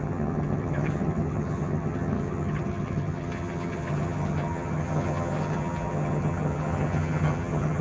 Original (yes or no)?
no